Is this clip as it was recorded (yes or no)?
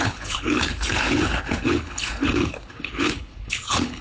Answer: no